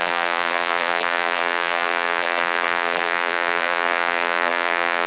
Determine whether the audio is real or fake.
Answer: fake